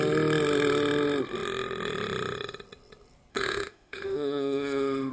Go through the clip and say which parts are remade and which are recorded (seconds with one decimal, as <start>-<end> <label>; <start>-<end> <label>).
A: 0.0-3.3 recorded; 3.3-5.1 remade